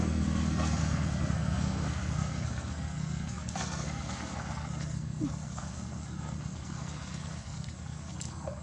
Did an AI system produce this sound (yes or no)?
yes